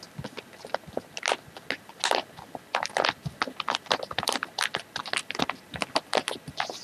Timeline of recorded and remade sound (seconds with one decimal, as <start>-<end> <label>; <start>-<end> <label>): 0.0-6.8 recorded